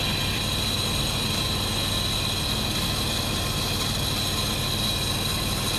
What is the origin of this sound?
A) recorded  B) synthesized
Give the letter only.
A